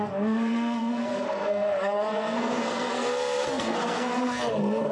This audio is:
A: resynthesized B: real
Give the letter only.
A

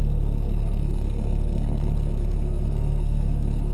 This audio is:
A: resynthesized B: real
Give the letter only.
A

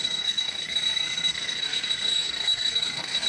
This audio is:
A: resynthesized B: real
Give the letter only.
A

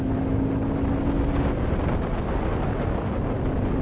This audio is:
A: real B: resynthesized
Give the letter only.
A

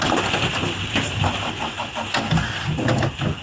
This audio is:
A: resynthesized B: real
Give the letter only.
B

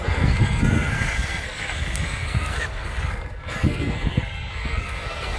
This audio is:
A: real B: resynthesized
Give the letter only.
B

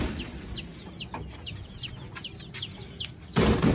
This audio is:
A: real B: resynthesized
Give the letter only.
A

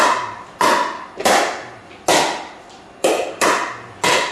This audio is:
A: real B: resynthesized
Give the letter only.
A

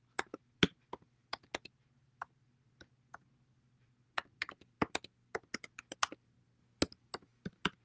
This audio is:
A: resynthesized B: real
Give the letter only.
B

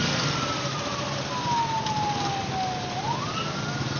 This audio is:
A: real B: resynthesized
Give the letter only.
A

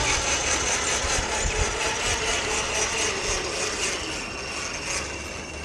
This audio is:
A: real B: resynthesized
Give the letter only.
A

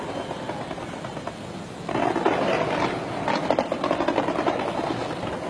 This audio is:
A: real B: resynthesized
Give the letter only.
A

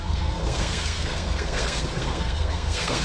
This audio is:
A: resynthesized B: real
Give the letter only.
A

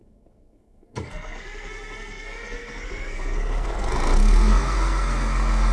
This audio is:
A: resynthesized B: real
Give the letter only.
A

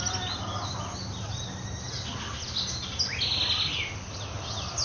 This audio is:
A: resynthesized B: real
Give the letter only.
B